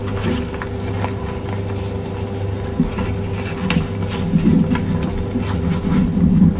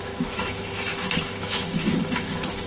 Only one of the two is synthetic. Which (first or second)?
second